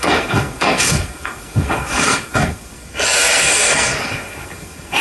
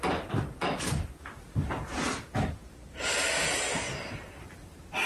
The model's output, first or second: first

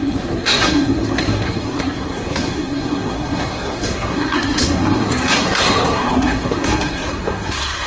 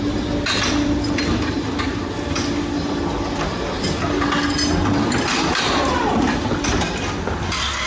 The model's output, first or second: first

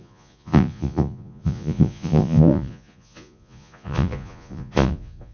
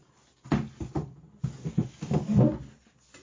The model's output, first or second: first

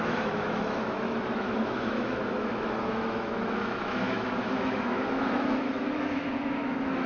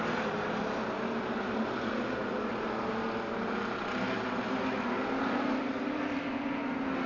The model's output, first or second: first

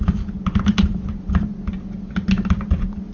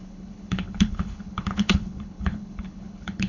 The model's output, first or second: second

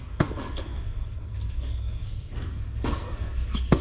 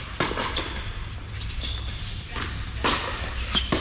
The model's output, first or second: first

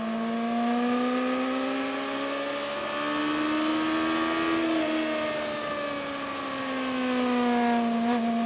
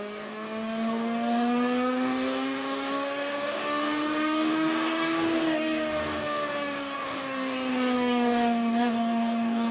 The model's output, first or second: second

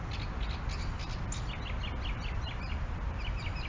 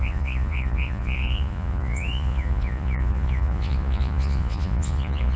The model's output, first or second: second